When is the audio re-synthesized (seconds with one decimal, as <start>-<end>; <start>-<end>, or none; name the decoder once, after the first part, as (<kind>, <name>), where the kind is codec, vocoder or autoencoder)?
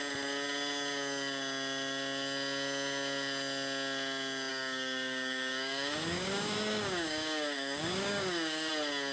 4.5-8.7 (codec, DAC)